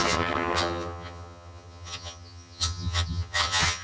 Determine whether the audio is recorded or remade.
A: remade